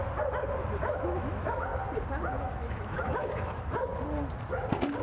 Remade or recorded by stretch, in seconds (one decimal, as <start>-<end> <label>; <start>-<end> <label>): 0.0-0.8 recorded; 0.8-1.7 remade; 1.7-2.4 recorded; 2.4-3.9 remade; 3.9-5.0 recorded